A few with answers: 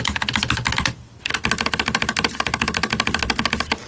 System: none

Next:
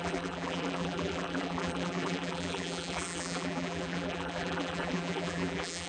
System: vocoder, BigVGAN v2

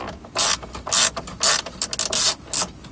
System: none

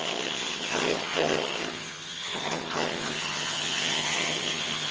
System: vocoder, HiFi-GAN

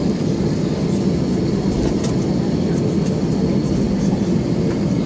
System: none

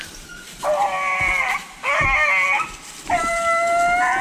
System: none